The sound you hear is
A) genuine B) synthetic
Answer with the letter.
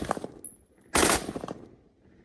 A